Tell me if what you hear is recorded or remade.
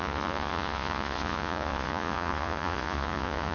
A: remade